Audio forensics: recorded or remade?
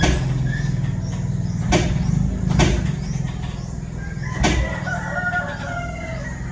recorded